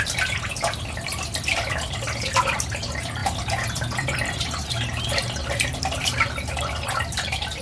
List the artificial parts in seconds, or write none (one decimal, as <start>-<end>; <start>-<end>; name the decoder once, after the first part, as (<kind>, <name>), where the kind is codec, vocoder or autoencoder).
none